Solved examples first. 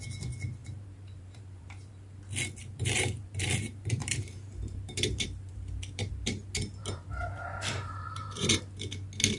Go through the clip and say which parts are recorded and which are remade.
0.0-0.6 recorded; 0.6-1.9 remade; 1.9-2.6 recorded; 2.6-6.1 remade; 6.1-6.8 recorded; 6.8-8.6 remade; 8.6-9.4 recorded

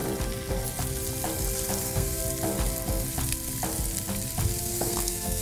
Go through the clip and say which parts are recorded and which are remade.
0.0-1.8 recorded; 1.8-2.2 remade; 2.2-4.6 recorded; 4.6-5.4 remade

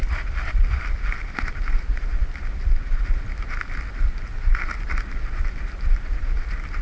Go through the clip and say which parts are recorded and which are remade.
0.0-6.8 recorded

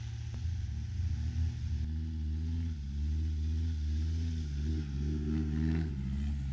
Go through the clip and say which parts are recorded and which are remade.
0.0-4.7 recorded; 4.7-5.9 remade; 5.9-6.5 recorded

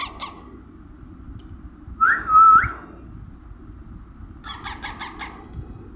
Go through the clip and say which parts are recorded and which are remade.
0.0-6.0 recorded

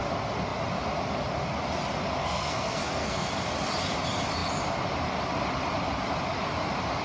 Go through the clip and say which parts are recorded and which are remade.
0.0-2.2 recorded; 2.2-3.3 remade; 3.3-7.0 recorded

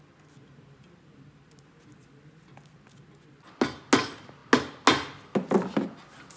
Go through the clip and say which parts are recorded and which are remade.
0.0-6.4 recorded